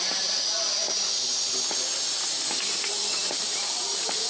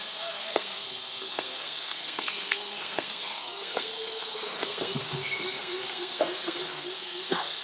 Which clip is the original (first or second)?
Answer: first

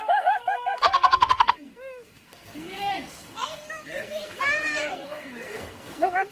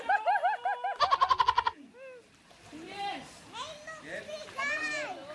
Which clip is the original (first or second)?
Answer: second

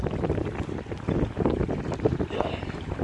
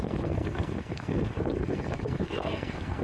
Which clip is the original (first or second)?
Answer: first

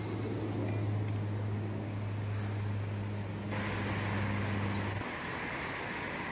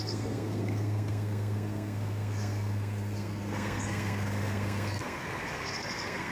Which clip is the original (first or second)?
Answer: first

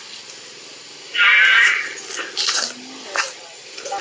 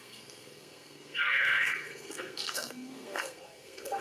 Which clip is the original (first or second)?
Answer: first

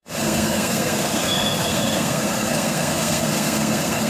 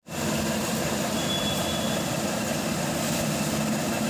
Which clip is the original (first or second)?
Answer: second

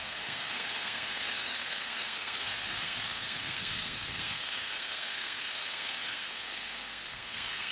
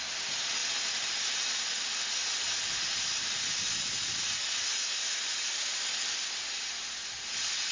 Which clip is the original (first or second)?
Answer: second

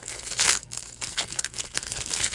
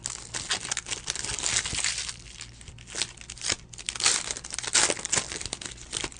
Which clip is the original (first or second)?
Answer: second